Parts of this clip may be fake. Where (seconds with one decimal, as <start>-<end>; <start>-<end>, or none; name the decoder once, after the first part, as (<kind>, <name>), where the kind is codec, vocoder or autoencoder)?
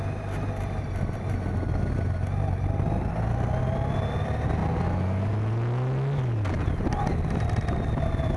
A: none